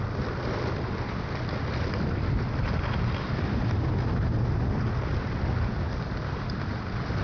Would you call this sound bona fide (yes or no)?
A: yes